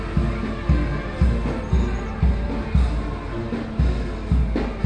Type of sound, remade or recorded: recorded